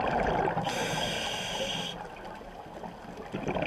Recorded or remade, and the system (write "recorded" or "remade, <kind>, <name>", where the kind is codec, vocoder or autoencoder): recorded